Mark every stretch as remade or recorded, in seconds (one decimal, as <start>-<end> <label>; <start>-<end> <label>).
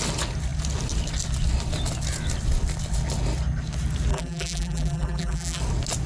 0.0-4.1 recorded; 4.1-5.6 remade; 5.6-6.1 recorded